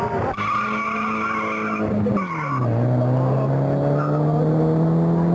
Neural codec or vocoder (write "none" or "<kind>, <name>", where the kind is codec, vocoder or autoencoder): none